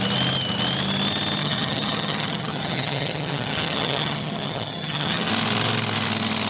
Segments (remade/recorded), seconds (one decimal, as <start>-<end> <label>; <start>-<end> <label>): 0.0-1.4 recorded; 1.4-5.3 remade; 5.3-6.5 recorded